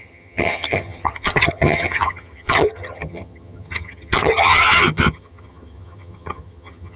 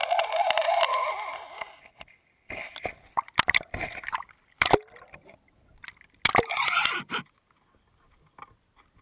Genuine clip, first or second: second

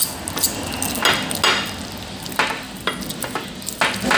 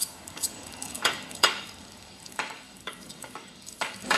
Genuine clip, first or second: first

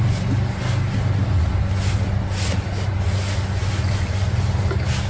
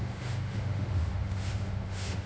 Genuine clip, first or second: first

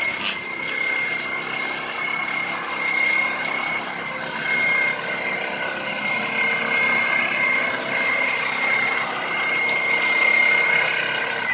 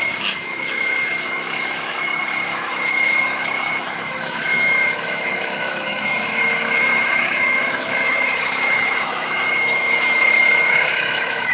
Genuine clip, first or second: first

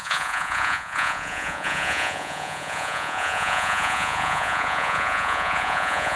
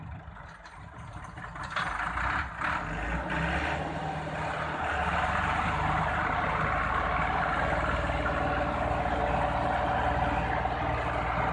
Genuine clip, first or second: second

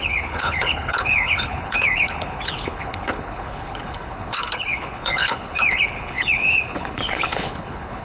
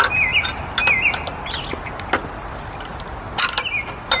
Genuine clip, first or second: second